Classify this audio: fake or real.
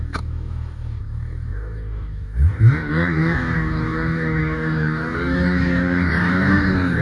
fake